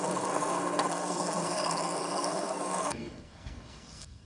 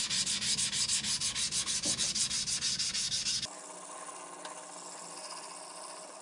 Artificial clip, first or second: first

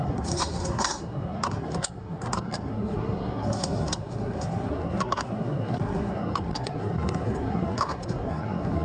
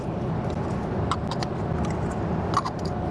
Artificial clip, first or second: first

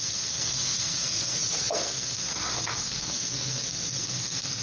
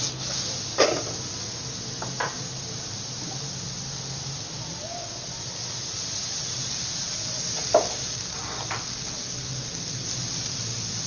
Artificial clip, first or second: first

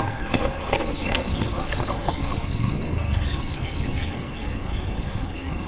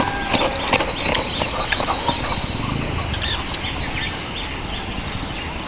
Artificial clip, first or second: first